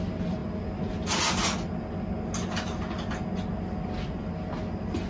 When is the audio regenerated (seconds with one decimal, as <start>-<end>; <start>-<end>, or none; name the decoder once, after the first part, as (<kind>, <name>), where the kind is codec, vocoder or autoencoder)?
none